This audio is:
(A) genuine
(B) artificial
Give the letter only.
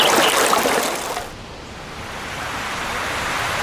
A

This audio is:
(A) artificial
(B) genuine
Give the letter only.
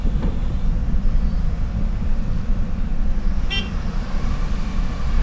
B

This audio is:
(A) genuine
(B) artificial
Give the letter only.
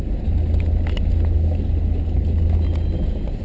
A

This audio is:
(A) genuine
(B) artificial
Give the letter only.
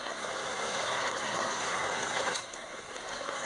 B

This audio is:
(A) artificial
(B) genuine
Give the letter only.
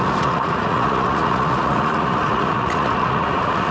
A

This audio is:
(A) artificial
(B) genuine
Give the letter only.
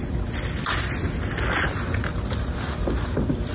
B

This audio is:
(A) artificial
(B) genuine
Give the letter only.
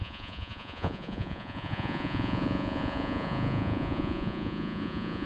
A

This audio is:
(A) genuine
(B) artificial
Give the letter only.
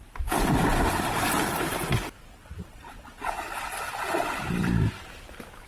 B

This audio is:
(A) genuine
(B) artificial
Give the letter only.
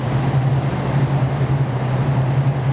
A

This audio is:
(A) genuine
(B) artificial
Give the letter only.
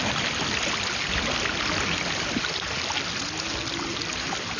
A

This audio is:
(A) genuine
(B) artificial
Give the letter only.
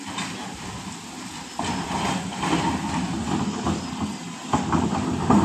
A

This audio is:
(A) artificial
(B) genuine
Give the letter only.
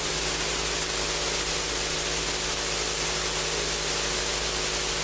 B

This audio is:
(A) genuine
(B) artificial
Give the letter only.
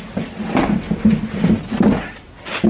A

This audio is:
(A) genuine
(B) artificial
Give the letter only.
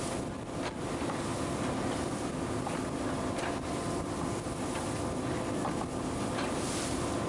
A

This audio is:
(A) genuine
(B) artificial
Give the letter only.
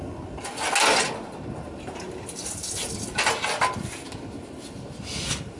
A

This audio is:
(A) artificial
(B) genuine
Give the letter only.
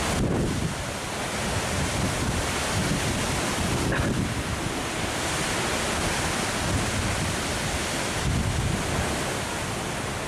B